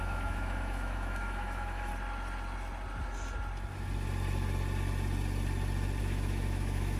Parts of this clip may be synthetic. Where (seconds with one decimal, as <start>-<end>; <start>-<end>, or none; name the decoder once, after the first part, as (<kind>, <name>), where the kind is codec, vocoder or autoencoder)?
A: 0.0-1.9 (autoencoder, DAC-VAE); 6.0-7.0